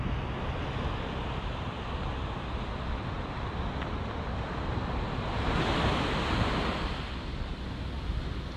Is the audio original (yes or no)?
yes